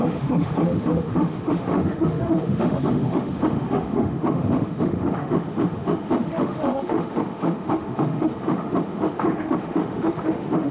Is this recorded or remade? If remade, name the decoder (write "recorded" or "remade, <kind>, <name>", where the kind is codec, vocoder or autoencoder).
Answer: remade, autoencoder, DAC-VAE